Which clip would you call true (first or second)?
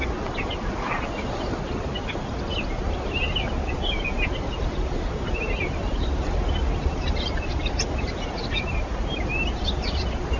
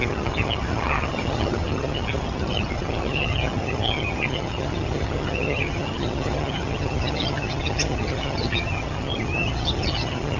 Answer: first